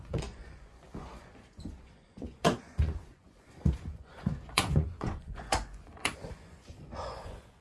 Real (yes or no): no